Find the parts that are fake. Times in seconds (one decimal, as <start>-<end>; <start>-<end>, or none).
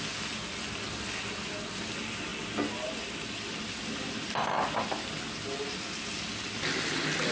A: none